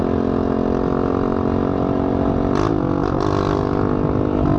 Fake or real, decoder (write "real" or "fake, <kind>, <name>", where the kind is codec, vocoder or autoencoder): real